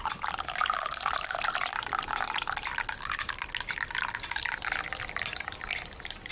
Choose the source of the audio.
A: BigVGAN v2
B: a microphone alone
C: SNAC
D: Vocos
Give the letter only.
B